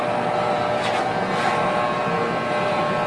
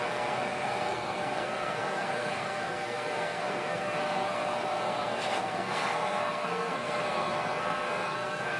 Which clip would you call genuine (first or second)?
first